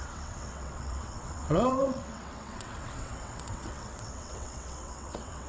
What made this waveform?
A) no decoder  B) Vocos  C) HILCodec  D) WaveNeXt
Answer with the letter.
D